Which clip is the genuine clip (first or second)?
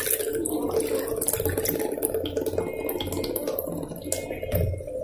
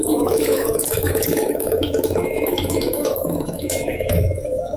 first